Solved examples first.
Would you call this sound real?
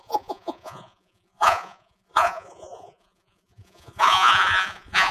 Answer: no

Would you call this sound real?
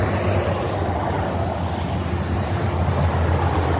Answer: yes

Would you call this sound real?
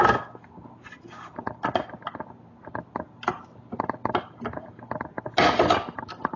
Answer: yes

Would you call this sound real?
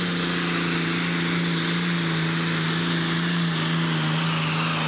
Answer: yes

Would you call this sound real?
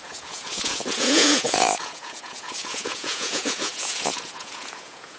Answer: no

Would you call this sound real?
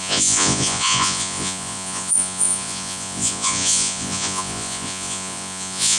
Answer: no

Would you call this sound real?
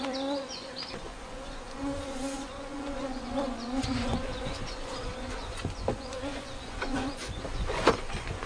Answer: no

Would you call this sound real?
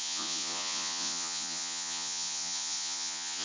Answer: no